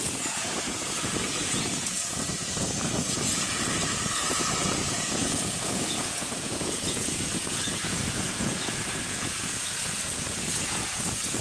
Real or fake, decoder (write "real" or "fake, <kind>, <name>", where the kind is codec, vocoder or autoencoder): fake, vocoder, Vocos